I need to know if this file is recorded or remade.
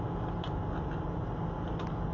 recorded